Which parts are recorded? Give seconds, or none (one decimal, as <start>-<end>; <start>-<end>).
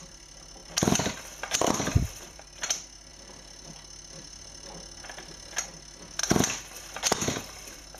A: 0.0-0.6; 2.4-3.1; 4.5-8.0